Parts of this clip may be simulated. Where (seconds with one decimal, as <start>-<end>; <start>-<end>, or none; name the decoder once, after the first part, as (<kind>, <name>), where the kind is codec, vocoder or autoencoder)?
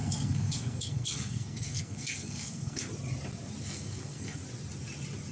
0.0-2.9 (codec, SNAC); 3.6-4.4